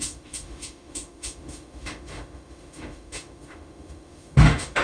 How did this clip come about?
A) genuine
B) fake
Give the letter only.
B